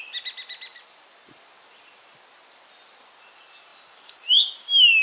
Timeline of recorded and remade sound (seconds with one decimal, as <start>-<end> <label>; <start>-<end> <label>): 0.0-0.7 recorded; 0.7-1.3 remade; 1.3-3.7 recorded; 3.7-4.5 remade; 4.5-5.0 recorded